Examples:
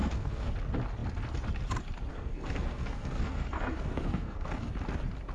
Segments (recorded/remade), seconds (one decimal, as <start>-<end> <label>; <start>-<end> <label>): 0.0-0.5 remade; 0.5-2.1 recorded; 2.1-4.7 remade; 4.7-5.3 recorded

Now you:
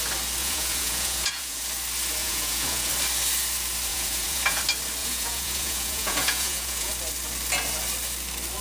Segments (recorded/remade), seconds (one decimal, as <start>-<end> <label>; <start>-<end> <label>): 0.0-0.4 recorded; 0.4-1.6 remade; 1.6-2.2 recorded; 2.2-2.9 remade; 2.9-3.9 recorded; 3.9-4.6 remade; 4.6-5.0 recorded; 5.0-6.9 remade; 6.9-8.6 recorded

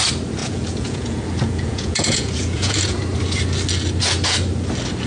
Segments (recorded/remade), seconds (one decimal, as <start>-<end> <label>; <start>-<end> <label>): 0.0-0.4 recorded; 0.4-3.0 remade; 3.0-5.1 recorded

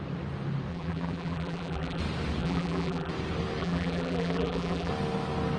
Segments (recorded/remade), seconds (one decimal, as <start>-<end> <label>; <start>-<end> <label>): 0.0-0.7 recorded; 0.7-2.0 remade; 2.0-2.4 recorded; 2.4-3.1 remade; 3.1-3.6 recorded; 3.6-4.9 remade; 4.9-5.6 recorded

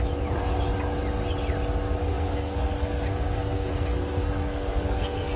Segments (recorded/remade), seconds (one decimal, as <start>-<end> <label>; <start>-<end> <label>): 0.0-2.0 recorded; 2.0-5.4 remade

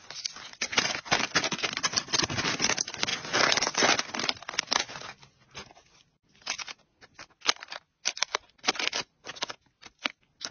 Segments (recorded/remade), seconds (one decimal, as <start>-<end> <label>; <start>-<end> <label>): 0.0-10.5 recorded